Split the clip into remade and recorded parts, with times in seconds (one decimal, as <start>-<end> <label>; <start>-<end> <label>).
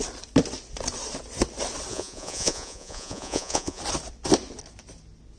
0.0-1.9 recorded; 1.9-3.8 remade; 3.8-5.4 recorded